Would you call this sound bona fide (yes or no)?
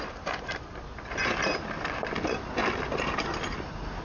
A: yes